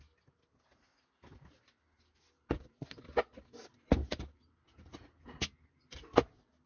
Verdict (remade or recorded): recorded